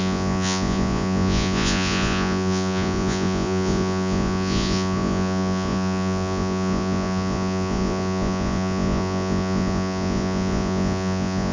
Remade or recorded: remade